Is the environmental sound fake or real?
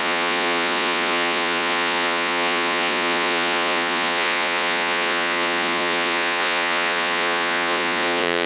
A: fake